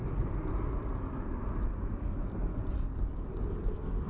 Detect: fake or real real